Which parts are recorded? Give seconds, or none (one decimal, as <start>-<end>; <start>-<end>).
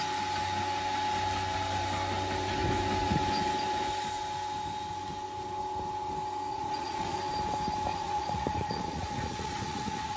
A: 0.0-6.5; 7.2-7.9